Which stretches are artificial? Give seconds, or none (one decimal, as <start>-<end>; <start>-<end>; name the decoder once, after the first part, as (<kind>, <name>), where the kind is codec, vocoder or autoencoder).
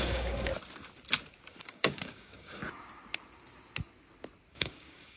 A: 0.0-0.5 (codec, DAC); 1.6-2.6; 4.5-5.2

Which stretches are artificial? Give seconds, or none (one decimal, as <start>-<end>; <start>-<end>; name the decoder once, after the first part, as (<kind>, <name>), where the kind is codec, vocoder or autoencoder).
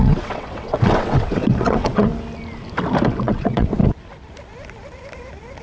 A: 0.0-2.1 (vocoder, WaveNeXt); 3.2-3.8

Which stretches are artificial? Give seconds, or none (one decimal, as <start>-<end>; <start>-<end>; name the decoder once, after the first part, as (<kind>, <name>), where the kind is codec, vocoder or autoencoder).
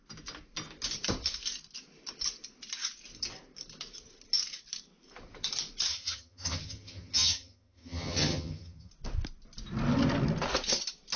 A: 5.9-8.9 (vocoder, HiFi-GAN)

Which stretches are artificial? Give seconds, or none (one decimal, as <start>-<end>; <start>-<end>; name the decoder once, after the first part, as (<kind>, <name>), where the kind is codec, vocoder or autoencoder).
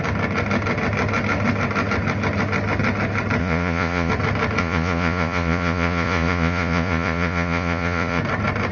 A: 3.4-4.1 (vocoder, Vocos); 4.6-8.2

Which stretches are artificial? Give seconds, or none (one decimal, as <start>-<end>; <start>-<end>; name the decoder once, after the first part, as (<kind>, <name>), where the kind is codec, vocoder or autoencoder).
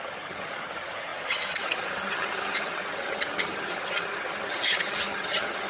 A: 0.0-5.7 (vocoder, HiFi-GAN)